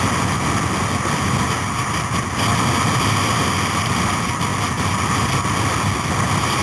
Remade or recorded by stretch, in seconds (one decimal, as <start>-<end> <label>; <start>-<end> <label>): 0.0-6.6 recorded